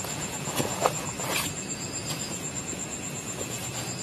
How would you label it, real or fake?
fake